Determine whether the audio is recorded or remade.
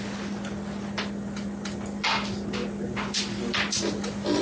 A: recorded